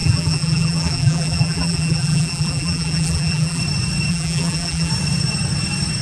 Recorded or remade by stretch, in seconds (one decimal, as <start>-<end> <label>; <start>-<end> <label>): 0.0-3.6 remade; 3.6-4.1 recorded; 4.1-4.9 remade; 4.9-6.0 recorded

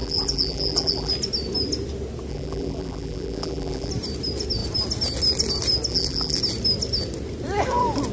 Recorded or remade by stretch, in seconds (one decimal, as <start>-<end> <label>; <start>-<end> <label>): 0.0-1.1 remade; 1.1-2.3 recorded; 2.3-3.9 remade; 3.9-5.9 recorded; 5.9-6.4 remade; 6.4-8.1 recorded

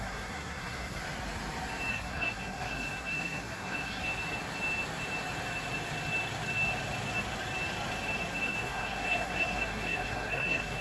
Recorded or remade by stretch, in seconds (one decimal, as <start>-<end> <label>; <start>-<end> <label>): 0.0-1.0 remade; 1.0-1.9 recorded; 1.9-4.0 remade; 4.0-8.3 recorded; 8.3-10.8 remade